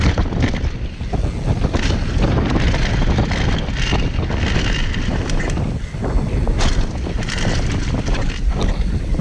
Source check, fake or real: real